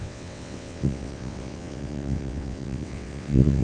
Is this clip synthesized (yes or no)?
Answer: yes